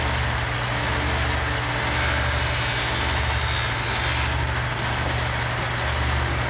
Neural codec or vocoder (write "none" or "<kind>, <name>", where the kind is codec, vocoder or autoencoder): none